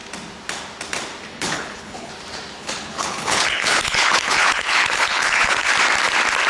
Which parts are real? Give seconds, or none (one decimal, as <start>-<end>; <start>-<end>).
0.0-1.3; 2.1-2.6; 5.7-6.5